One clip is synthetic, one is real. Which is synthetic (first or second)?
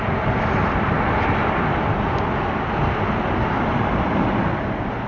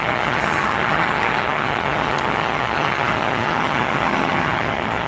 second